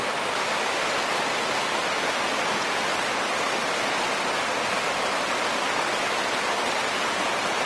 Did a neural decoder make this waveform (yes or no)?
no